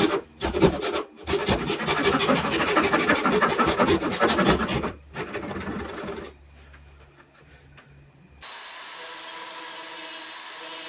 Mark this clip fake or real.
real